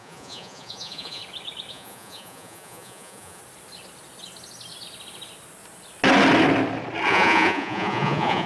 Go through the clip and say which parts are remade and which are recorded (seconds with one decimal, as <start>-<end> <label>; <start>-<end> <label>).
0.0-1.2 remade; 1.2-1.7 recorded; 1.7-3.4 remade; 3.4-7.1 recorded; 7.1-8.5 remade